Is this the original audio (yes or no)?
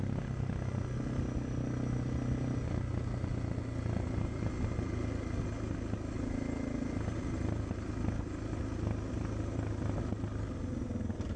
yes